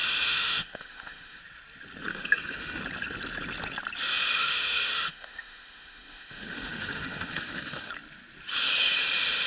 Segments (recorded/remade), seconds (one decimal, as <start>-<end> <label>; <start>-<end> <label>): 0.0-1.4 remade; 1.4-2.1 recorded; 2.1-2.8 remade; 2.8-4.4 recorded; 4.4-7.9 remade; 7.9-9.5 recorded